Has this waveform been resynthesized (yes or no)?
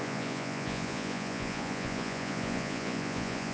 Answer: yes